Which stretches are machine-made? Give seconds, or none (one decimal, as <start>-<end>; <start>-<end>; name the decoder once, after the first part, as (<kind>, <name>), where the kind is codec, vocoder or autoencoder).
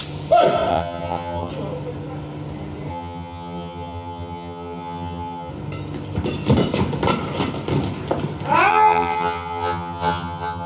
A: 0.7-1.5 (vocoder, HiFi-GAN); 2.9-5.5; 8.7-10.7